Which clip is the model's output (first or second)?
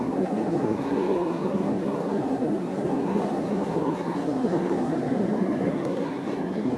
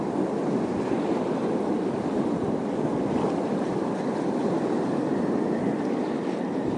first